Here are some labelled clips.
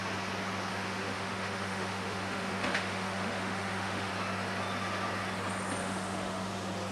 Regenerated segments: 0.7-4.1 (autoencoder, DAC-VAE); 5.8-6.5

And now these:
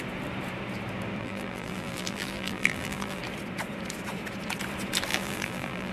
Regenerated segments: 1.2-3.2 (vocoder, BigVGAN v2); 5.1-5.9

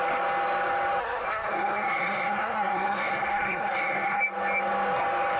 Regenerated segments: 1.0-4.2 (codec, SNAC)

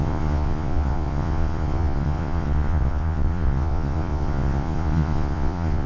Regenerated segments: 0.0-5.9 (vocoder, Vocos)

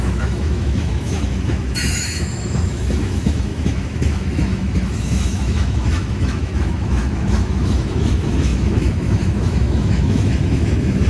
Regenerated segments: 0.0-11.1 (autoencoder, DAC-VAE)